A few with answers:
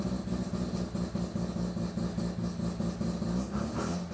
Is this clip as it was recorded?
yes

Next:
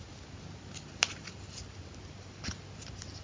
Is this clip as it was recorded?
yes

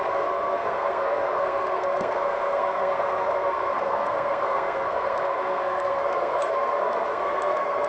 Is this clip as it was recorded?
no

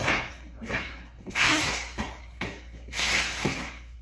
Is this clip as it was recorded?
no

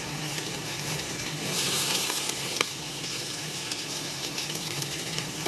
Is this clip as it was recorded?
no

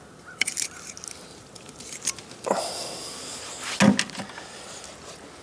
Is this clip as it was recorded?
yes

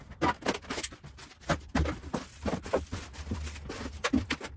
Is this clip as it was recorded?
yes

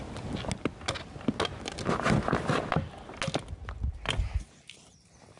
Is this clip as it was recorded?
yes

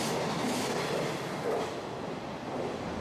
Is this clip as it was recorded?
yes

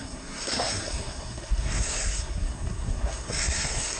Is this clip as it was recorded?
no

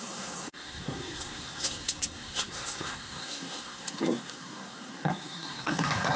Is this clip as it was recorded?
no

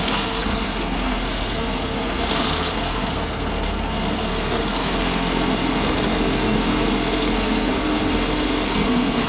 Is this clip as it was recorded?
no